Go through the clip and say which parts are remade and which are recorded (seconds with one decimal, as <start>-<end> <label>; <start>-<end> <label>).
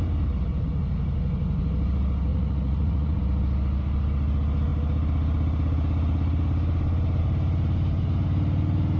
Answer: 0.0-2.3 recorded; 2.3-3.2 remade; 3.2-9.0 recorded